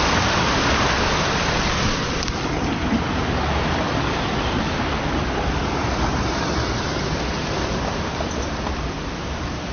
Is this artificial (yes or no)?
no